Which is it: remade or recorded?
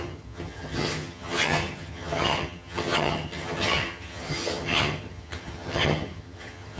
remade